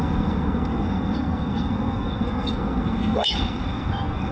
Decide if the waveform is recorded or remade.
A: remade